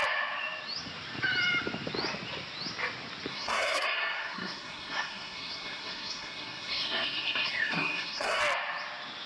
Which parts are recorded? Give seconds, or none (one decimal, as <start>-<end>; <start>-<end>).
0.0-3.3; 8.4-9.3